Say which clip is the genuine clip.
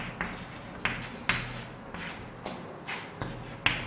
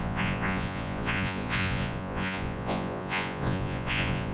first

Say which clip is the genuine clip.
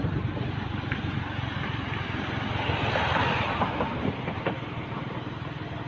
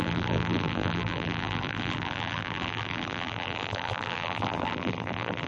first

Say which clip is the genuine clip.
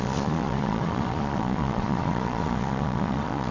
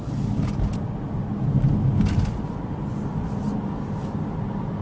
second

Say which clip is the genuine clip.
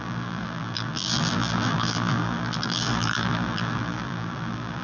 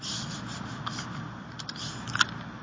second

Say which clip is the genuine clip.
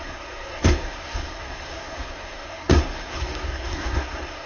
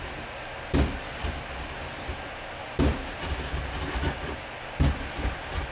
second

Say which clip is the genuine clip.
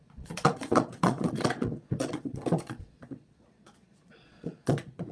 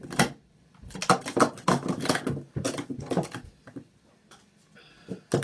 second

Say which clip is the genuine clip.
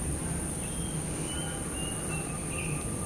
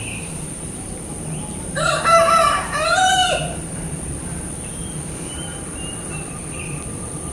first